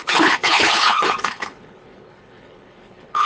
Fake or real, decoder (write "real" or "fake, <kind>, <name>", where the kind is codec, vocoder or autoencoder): fake, codec, HILCodec